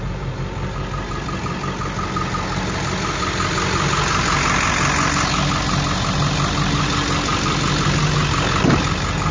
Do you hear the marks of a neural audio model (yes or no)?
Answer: no